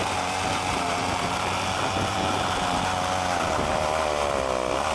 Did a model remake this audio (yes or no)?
yes